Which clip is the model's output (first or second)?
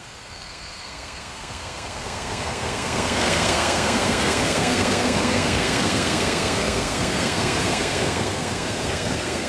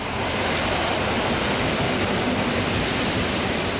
first